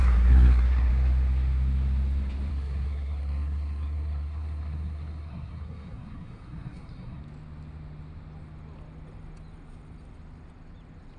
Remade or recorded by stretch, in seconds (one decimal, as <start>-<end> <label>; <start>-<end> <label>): 0.0-0.9 remade; 0.9-2.5 recorded; 2.5-7.2 remade; 7.2-11.2 recorded